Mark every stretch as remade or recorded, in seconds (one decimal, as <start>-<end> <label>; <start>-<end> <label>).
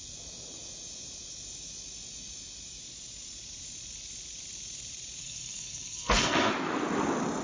0.0-5.2 recorded; 5.2-6.5 remade; 6.5-7.4 recorded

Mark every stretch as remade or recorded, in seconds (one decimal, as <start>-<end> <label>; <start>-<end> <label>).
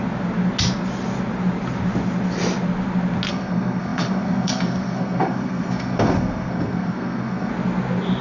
0.0-3.3 recorded; 3.3-7.5 remade; 7.5-8.2 recorded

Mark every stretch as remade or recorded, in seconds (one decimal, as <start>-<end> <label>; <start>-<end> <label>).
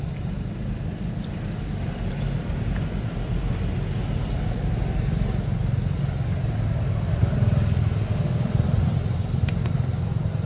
0.0-10.5 recorded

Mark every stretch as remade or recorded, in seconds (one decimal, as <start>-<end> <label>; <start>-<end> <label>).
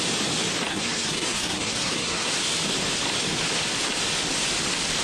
0.0-0.7 recorded; 0.7-2.3 remade; 2.3-5.0 recorded